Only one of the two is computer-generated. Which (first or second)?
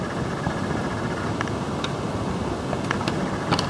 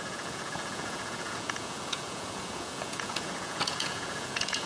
second